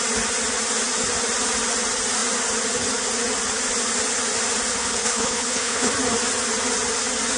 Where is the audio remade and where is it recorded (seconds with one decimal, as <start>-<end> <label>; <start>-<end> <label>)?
0.0-4.7 recorded; 4.7-5.9 remade; 5.9-7.4 recorded